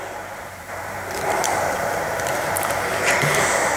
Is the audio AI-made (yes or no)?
yes